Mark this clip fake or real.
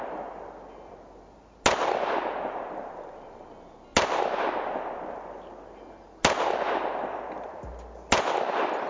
real